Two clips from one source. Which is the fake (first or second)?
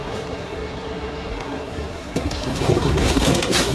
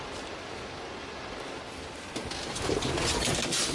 first